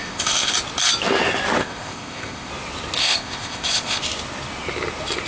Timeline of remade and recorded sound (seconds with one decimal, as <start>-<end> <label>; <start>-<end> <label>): 0.0-0.5 remade; 0.5-1.6 recorded; 1.6-2.5 remade; 2.5-3.0 recorded; 3.0-4.0 remade; 4.0-5.3 recorded